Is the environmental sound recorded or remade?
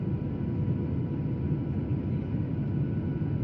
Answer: recorded